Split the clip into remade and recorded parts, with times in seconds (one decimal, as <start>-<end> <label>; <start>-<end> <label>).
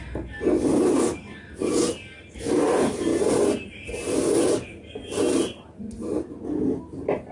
0.0-7.3 recorded